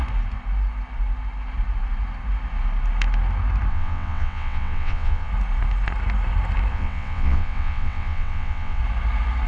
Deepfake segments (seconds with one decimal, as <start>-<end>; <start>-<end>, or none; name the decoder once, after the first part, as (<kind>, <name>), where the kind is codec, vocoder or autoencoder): 3.7-5.3 (vocoder, WaveNeXt); 6.7-8.8